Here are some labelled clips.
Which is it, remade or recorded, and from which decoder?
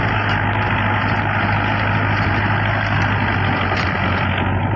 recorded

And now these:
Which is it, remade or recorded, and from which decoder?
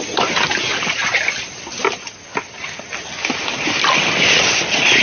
recorded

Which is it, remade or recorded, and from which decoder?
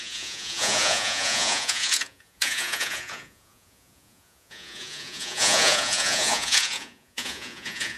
remade, vocoder, Vocos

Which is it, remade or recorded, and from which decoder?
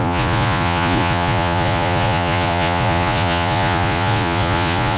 remade, vocoder, Vocos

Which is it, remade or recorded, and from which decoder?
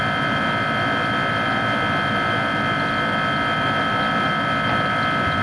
recorded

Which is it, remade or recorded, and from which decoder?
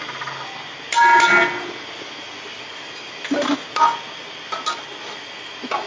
recorded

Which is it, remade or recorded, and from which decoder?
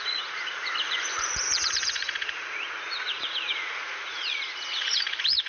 remade, vocoder, Vocos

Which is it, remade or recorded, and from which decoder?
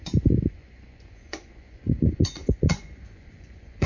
remade, vocoder, Vocos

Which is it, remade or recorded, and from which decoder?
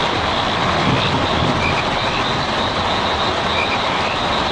recorded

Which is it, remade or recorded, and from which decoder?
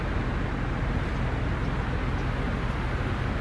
recorded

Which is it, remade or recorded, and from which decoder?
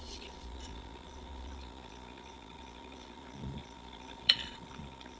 remade, vocoder, Vocos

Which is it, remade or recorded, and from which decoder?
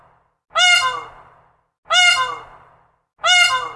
recorded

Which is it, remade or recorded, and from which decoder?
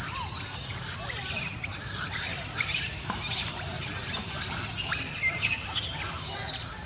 recorded